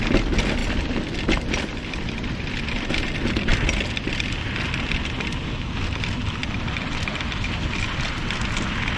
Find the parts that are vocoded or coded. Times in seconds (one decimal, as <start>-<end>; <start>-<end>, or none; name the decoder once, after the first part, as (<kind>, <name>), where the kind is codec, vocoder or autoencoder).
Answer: none